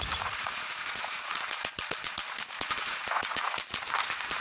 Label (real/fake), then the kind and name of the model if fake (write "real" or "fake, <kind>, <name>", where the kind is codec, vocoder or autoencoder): fake, vocoder, Vocos